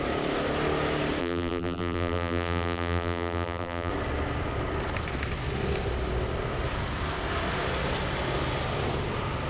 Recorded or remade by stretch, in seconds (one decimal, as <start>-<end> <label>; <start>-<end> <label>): 0.0-1.2 recorded; 1.2-3.9 remade; 3.9-9.5 recorded